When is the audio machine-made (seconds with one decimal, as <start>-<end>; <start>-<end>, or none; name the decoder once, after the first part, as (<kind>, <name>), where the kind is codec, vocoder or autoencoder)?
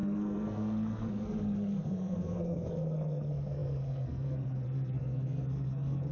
0.0-6.1 (codec, SNAC)